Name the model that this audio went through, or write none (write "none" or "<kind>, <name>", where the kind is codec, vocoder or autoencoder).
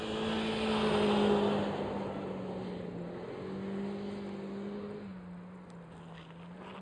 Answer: none